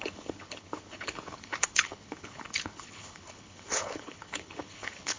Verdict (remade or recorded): remade